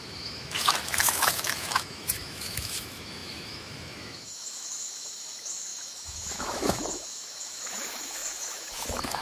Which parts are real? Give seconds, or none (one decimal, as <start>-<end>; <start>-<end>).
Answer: none